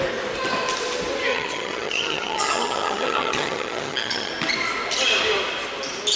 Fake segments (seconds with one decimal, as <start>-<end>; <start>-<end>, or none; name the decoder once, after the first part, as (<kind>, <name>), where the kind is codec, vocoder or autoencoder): 1.3-4.3 (vocoder, HiFi-GAN)